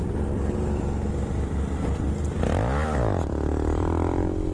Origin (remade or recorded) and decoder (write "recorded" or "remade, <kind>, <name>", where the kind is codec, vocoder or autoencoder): remade, vocoder, BigVGAN v2